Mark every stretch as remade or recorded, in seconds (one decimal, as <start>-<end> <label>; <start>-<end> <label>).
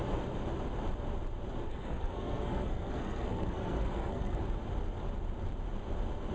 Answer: 0.0-1.7 recorded; 1.7-4.4 remade; 4.4-6.3 recorded